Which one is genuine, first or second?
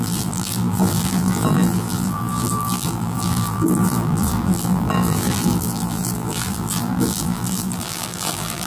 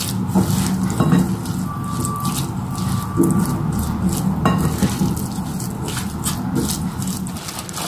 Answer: second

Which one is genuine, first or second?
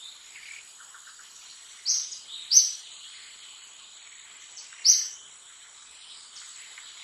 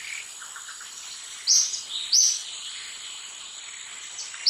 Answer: second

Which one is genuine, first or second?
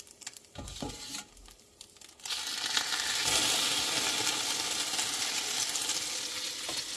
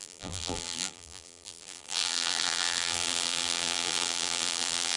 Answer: first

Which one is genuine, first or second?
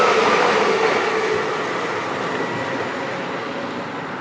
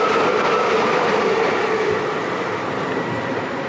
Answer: first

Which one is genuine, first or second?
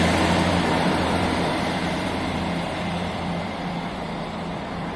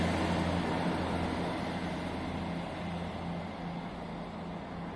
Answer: second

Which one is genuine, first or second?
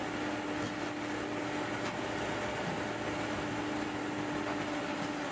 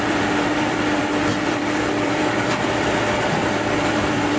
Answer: first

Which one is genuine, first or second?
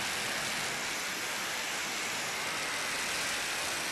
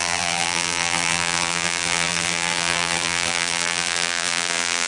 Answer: first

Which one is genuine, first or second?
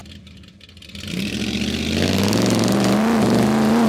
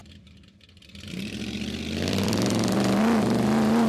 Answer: first